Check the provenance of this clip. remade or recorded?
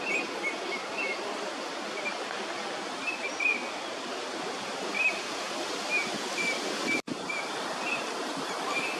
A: recorded